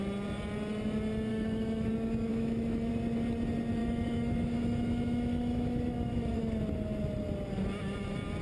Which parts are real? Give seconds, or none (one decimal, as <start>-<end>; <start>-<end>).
0.0-1.3; 1.9-2.3; 2.9-3.8; 6.6-8.4